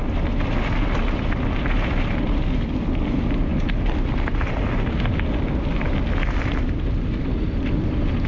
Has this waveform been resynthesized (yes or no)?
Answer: no